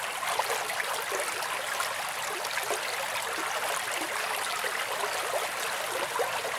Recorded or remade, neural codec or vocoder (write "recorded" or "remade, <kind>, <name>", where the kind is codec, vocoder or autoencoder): recorded